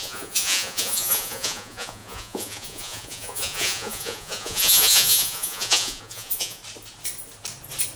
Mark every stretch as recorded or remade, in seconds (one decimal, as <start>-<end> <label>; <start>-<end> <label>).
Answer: 0.0-6.6 remade; 6.6-8.0 recorded